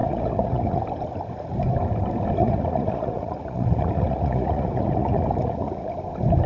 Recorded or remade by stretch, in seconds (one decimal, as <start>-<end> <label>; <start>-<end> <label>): 0.0-0.8 remade; 0.8-2.4 recorded; 2.4-5.9 remade; 5.9-6.5 recorded